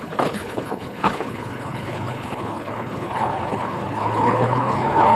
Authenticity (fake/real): fake